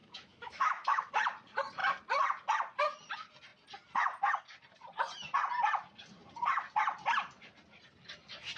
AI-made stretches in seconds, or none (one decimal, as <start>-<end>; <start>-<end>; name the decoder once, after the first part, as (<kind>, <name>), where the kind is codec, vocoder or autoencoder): 0.0-1.1 (autoencoder, DAC-VAE)